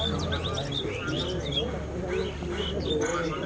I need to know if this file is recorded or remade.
recorded